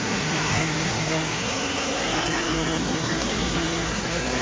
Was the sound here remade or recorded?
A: remade